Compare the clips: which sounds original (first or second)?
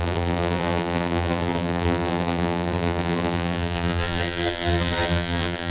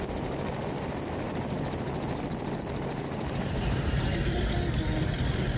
second